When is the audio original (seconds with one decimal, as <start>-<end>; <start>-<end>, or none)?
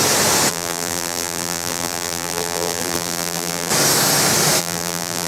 0.0-0.5; 3.7-4.6